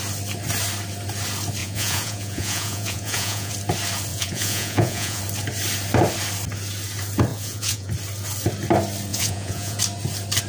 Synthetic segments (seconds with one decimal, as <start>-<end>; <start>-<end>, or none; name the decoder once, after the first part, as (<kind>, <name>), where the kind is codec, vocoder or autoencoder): 1.6-3.5 (vocoder, Vocos); 4.1-5.2; 7.3-7.9; 9.1-9.8